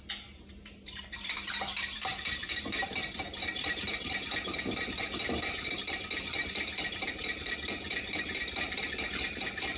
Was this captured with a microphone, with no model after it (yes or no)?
no